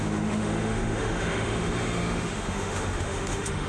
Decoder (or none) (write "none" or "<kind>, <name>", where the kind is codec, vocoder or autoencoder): autoencoder, DAC-VAE